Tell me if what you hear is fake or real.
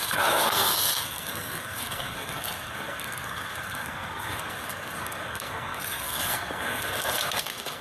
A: fake